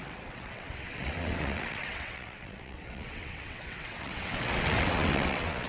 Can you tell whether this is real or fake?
fake